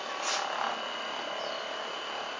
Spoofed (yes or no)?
no